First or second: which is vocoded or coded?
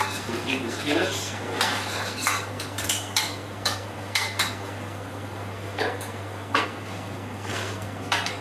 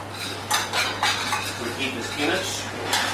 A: first